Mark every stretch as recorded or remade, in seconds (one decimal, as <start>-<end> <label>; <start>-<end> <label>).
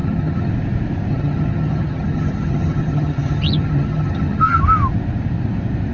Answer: 0.0-0.5 remade; 0.5-1.1 recorded; 1.1-4.6 remade; 4.6-5.9 recorded